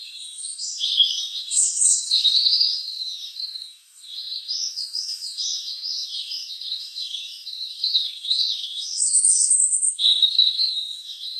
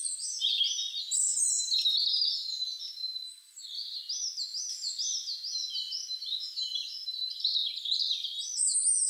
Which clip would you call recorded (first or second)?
second